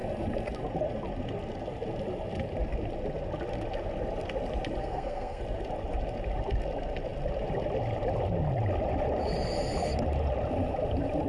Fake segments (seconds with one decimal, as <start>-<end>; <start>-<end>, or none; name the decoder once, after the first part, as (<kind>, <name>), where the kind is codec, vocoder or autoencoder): 4.8-5.4 (codec, SNAC)

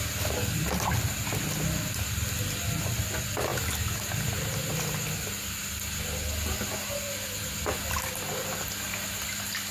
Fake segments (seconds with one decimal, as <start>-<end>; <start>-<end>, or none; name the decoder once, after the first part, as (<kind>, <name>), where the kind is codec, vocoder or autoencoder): none

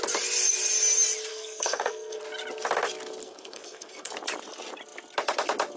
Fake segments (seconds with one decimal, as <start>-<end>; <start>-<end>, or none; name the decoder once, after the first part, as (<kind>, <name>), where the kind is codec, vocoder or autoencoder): 1.3-2.2 (codec, SNAC); 3.2-4.1

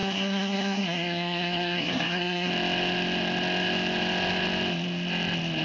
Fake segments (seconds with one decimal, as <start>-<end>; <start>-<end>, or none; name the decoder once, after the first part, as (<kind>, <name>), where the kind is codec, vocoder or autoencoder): 0.0-2.5 (codec, SNAC)

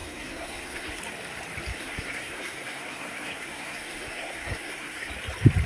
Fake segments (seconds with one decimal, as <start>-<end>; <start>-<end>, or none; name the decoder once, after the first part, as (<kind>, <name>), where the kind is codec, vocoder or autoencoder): 0.0-1.0 (codec, SNAC); 1.7-5.1